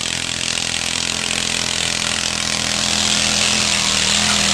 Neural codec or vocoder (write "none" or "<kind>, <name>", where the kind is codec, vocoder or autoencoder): none